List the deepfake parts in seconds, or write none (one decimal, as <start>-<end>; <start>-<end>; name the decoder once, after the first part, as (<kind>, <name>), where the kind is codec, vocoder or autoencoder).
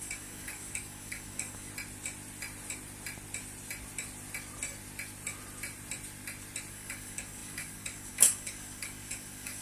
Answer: 0.0-1.7 (codec, DAC); 6.7-9.6